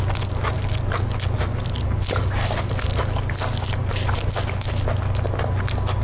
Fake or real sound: real